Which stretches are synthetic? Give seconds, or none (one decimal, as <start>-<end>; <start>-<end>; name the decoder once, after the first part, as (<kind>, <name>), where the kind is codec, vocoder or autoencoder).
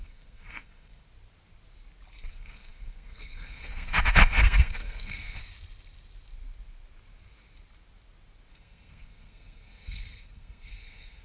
0.0-1.0 (codec, SNAC); 2.3-5.4; 8.5-11.2